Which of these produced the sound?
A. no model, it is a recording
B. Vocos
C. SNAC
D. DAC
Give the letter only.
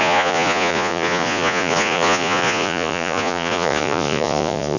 B